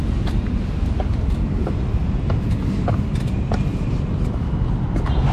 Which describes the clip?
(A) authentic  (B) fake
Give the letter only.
A